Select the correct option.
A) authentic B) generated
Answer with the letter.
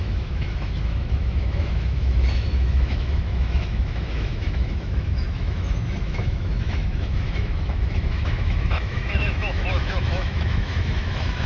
B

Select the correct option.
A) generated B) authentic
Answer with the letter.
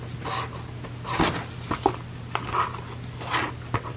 B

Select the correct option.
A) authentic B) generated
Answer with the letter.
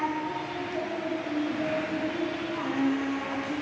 A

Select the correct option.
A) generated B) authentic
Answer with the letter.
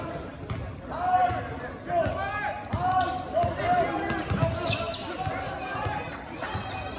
B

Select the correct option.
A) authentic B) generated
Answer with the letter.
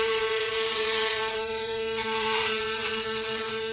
B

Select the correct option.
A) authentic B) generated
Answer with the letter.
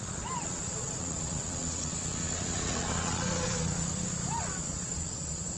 B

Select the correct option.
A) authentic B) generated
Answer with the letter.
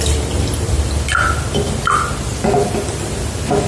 A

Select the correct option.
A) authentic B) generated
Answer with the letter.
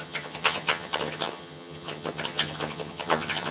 B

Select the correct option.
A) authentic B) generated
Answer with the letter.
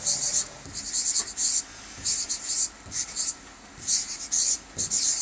B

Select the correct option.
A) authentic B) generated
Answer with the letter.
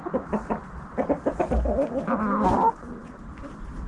A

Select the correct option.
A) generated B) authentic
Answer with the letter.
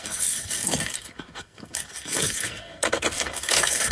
A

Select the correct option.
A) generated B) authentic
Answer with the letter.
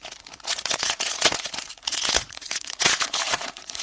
A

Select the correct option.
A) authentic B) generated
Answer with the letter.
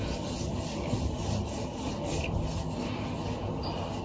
A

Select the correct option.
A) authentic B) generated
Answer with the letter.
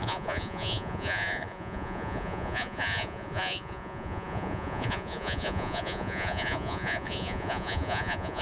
B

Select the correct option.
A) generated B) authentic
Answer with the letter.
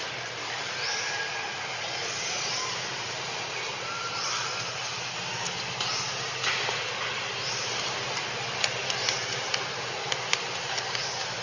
B